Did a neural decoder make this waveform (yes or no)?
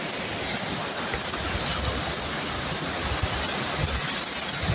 no